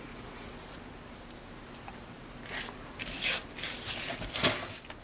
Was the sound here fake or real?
real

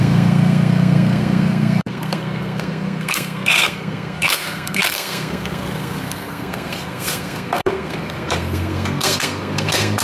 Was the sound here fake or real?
fake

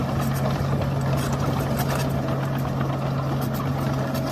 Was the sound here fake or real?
real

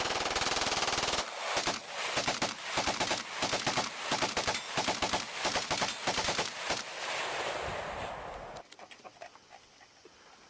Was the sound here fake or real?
real